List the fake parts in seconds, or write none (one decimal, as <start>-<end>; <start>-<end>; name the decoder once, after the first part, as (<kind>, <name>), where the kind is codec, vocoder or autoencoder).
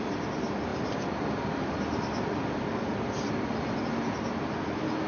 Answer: none